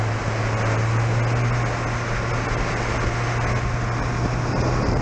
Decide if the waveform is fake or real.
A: real